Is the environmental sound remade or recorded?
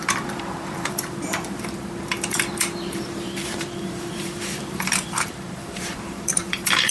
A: remade